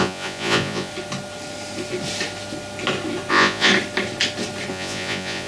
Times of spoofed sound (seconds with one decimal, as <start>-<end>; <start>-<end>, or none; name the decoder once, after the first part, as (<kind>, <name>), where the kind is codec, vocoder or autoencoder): 0.0-0.9 (vocoder, Vocos); 3.3-3.7; 4.7-5.5